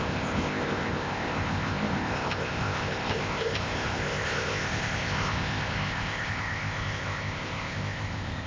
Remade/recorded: remade